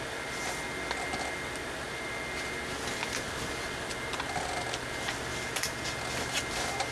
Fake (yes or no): no